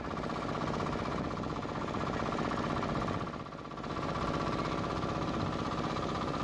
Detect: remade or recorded recorded